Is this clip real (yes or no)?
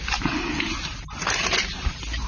yes